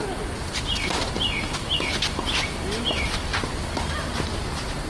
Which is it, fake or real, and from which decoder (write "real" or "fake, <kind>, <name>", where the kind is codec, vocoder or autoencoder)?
real